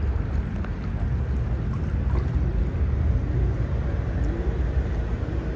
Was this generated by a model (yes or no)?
no